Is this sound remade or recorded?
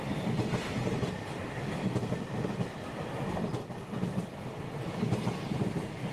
recorded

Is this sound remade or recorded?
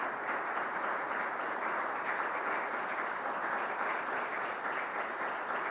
recorded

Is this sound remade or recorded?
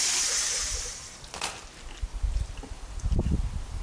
recorded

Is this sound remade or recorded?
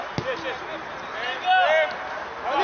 recorded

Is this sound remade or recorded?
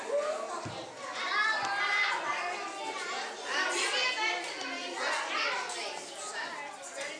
recorded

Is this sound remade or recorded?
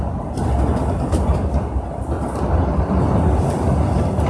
recorded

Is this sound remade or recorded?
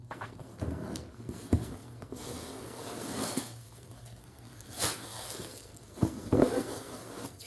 remade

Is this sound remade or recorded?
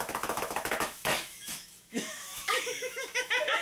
remade